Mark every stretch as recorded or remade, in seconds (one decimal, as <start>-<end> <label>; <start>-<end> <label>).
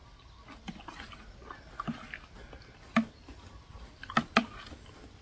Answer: 0.0-5.2 recorded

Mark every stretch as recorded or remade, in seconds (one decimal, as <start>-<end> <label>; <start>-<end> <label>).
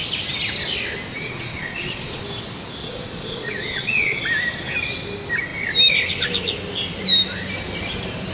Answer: 0.0-1.1 recorded; 1.1-2.2 remade; 2.2-2.8 recorded; 2.8-4.2 remade; 4.2-8.3 recorded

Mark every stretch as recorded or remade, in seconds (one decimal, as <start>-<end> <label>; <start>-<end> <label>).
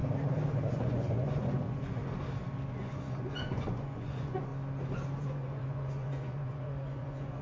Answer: 0.0-0.7 recorded; 0.7-2.0 remade; 2.0-2.7 recorded; 2.7-4.5 remade; 4.5-5.2 recorded; 5.2-7.4 remade